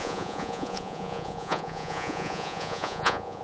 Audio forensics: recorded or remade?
remade